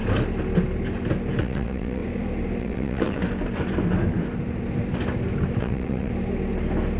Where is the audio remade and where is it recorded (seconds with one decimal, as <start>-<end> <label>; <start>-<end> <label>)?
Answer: 0.0-1.4 recorded; 1.4-2.0 remade; 2.0-2.6 recorded; 2.6-3.2 remade; 3.2-5.6 recorded; 5.6-6.1 remade; 6.1-7.0 recorded